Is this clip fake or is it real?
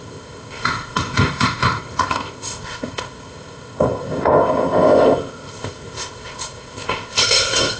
fake